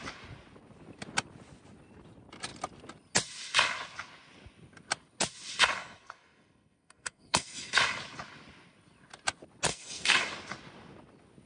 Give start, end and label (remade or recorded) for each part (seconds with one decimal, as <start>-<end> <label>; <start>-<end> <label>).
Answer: 0.0-5.8 recorded; 5.8-7.8 remade; 7.8-9.7 recorded; 9.7-10.2 remade; 10.2-11.5 recorded